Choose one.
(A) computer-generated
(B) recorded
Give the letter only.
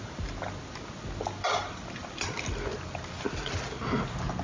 B